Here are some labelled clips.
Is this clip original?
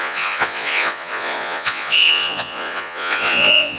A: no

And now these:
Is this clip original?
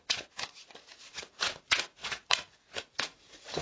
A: no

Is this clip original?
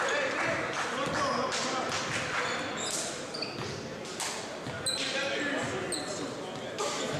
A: yes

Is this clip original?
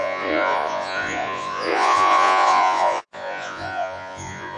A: no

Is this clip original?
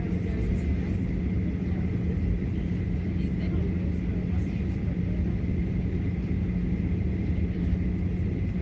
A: yes